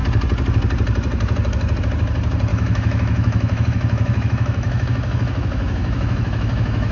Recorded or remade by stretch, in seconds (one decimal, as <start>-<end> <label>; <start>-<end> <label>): 0.0-2.5 recorded; 2.5-6.9 remade